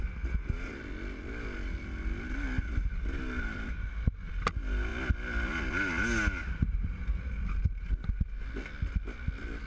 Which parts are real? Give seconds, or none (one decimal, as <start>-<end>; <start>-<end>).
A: 0.0-9.7